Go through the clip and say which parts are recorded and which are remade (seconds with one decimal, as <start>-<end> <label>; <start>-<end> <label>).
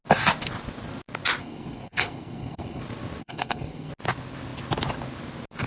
0.0-1.4 recorded; 1.4-2.8 remade; 2.8-3.2 recorded; 3.2-3.9 remade; 3.9-5.7 recorded